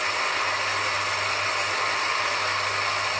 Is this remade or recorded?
recorded